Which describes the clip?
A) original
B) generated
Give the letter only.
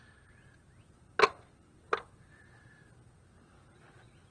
A